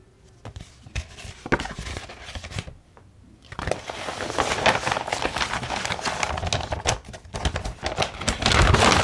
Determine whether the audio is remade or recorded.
recorded